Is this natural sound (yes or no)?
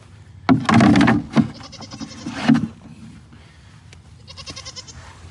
yes